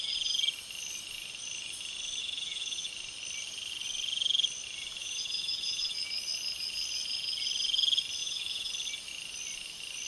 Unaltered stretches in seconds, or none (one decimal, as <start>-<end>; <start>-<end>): 0.0-2.2; 2.9-5.0; 5.9-8.2; 8.7-10.1